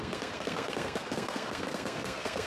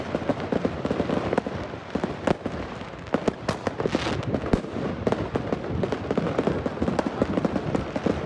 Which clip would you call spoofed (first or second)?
first